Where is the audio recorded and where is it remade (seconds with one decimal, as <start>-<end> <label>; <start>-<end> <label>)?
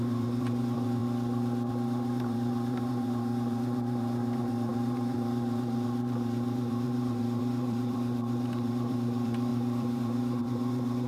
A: 0.0-1.0 remade; 1.0-1.7 recorded; 1.7-11.1 remade